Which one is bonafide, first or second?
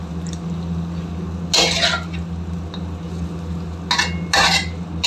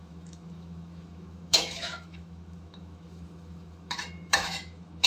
first